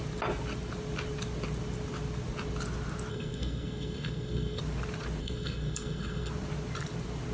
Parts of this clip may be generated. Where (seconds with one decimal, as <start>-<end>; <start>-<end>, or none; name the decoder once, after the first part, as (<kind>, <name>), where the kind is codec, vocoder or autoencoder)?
3.1-4.6 (codec, SNAC); 5.2-6.3